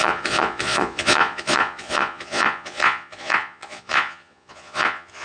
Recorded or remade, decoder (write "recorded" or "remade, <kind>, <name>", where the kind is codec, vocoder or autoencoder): remade, vocoder, Vocos